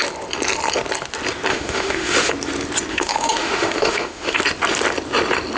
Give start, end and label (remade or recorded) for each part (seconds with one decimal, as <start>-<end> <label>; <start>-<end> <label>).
0.0-1.5 recorded; 1.5-2.3 remade; 2.3-2.9 recorded; 2.9-4.4 remade; 4.4-5.6 recorded